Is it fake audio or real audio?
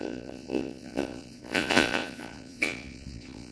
fake